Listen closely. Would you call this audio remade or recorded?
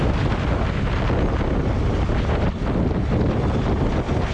recorded